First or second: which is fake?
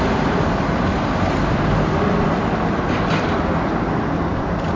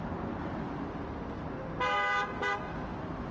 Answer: first